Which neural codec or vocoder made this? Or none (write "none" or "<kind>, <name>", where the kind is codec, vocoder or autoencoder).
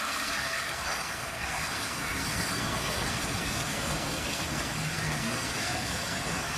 codec, SNAC